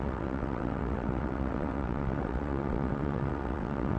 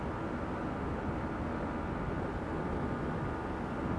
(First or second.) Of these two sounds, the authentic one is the second